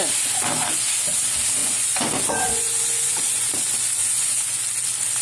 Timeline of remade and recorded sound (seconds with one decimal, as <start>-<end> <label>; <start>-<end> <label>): 0.0-1.6 recorded; 1.6-3.5 remade; 3.5-4.0 recorded; 4.0-4.6 remade; 4.6-5.2 recorded